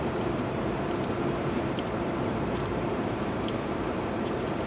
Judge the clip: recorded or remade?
remade